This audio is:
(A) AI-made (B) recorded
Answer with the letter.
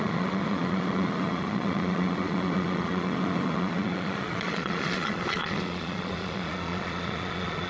A